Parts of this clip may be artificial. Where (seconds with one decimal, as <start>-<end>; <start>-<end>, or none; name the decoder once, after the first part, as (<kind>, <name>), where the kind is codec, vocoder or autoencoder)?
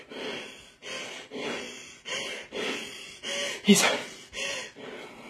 none